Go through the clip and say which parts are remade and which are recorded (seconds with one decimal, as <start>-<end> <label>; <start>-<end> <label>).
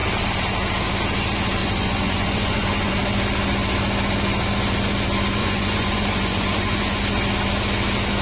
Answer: 0.0-1.6 recorded; 1.6-2.9 remade; 2.9-5.4 recorded; 5.4-7.0 remade; 7.0-8.2 recorded